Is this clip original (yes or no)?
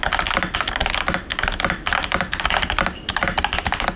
yes